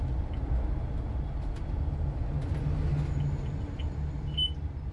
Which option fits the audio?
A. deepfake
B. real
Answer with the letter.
B